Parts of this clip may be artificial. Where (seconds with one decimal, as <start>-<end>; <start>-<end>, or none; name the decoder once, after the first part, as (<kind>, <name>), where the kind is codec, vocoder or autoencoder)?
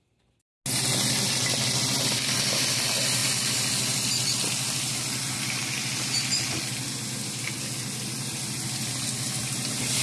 none